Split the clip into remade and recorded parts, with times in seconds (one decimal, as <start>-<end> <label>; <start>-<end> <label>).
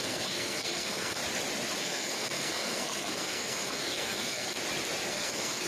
0.0-1.2 remade; 1.2-1.8 recorded; 1.8-4.6 remade; 4.6-5.1 recorded; 5.1-5.7 remade